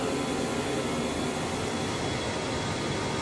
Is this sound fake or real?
real